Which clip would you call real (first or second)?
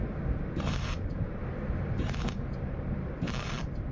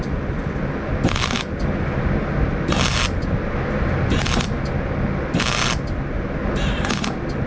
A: second